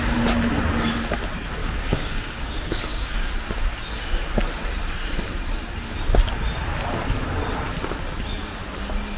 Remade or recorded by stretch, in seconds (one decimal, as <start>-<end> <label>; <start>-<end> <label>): 0.0-1.6 recorded; 1.6-3.3 remade; 3.3-9.2 recorded